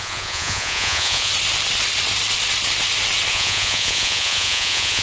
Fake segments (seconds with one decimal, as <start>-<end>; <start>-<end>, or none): 0.0-1.3; 3.3-5.0